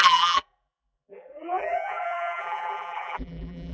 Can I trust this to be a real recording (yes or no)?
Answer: no